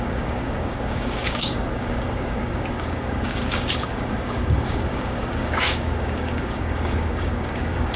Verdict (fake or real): fake